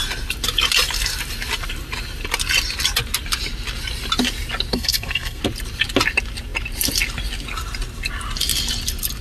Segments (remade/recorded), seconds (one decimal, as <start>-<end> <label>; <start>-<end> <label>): 0.0-4.7 recorded; 4.7-5.4 remade; 5.4-9.2 recorded